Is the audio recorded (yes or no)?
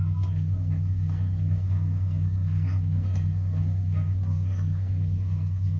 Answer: no